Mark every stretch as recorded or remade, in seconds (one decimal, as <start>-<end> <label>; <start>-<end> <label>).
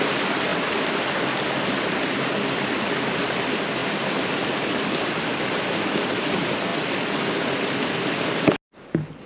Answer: 0.0-3.8 recorded; 3.8-4.5 remade; 4.5-6.7 recorded; 6.7-7.3 remade; 7.3-9.3 recorded